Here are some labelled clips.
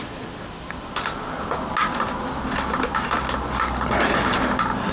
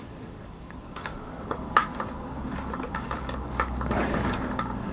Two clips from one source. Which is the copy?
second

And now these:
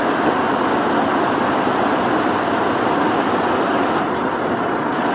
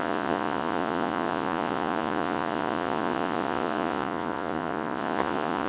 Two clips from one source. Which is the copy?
second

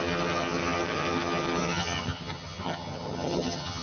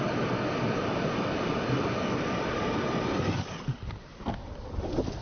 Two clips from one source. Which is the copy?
first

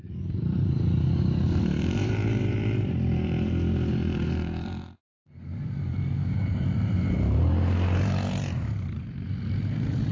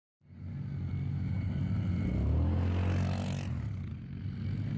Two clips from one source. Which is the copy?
first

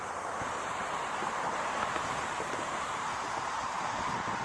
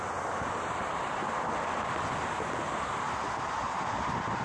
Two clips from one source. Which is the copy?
first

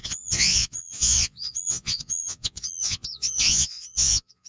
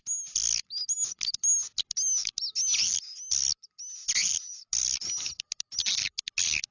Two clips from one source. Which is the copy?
first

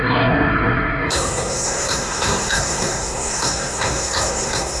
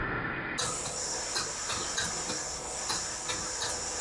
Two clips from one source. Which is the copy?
first